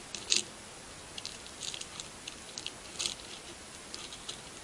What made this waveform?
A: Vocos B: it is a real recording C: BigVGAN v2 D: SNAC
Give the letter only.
B